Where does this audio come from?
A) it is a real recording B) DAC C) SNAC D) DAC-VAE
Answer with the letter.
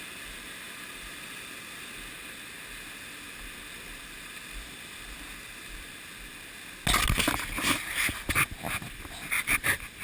A